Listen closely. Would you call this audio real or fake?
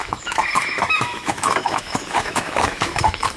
fake